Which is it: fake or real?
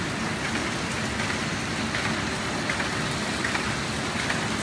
real